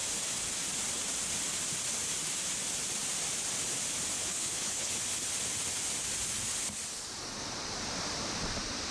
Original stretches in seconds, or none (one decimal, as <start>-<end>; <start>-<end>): 0.0-4.2; 4.9-8.9